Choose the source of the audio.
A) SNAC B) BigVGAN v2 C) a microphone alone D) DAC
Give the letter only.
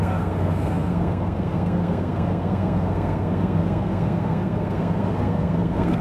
A